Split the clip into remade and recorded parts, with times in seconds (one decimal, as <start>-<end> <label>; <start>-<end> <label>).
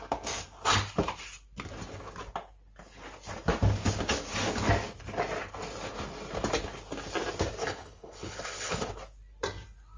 0.0-7.6 recorded; 7.6-8.9 remade; 8.9-10.0 recorded